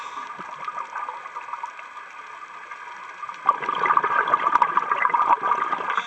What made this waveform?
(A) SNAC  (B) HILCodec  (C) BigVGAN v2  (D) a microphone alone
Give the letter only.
D